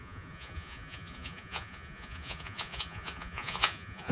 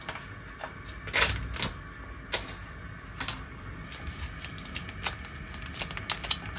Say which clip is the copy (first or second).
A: first